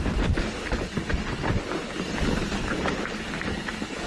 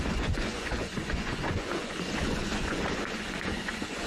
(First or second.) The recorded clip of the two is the first